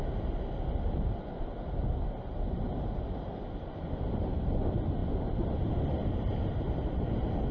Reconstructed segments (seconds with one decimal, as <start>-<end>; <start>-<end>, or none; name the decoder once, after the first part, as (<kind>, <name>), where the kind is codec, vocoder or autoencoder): none